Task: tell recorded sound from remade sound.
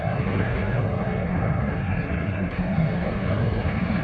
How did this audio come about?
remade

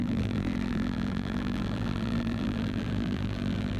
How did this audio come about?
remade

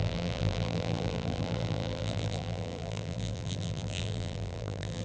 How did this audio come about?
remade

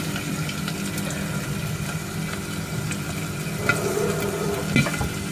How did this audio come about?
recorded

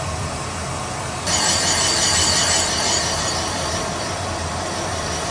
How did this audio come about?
recorded